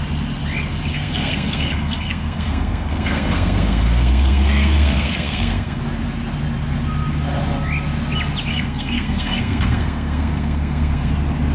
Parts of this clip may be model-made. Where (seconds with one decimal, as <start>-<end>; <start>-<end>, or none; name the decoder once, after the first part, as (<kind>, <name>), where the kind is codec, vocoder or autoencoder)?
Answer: 0.9-5.8 (codec, SNAC); 8.5-11.1